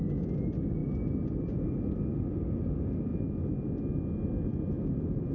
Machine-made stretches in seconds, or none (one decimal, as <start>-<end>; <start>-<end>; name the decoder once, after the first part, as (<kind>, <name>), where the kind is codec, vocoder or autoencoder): none